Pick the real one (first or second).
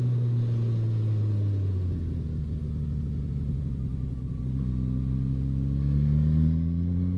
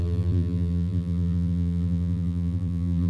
first